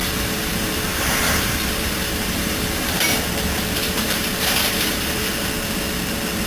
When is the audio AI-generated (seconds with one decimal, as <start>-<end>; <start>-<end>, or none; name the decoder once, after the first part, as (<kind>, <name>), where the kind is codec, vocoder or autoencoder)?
0.0-3.2 (vocoder, BigVGAN v2); 3.8-5.2